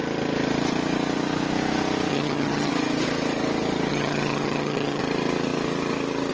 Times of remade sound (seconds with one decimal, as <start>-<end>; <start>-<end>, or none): 2.1-2.7; 3.9-5.0